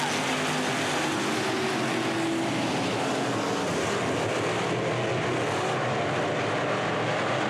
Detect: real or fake real